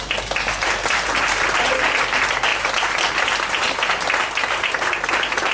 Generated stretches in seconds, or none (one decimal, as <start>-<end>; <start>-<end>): 0.8-1.7; 3.6-4.9